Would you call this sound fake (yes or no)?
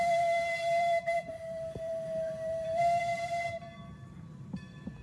yes